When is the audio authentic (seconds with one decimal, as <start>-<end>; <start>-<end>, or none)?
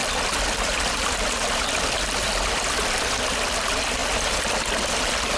2.5-5.4